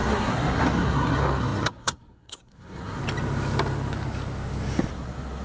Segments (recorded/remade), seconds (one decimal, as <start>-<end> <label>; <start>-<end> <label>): 0.0-3.0 remade; 3.0-4.9 recorded; 4.9-5.4 remade